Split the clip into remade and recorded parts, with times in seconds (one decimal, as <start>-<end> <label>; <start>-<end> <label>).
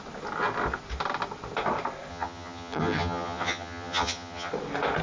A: 0.0-2.1 recorded; 2.1-4.5 remade; 4.5-5.0 recorded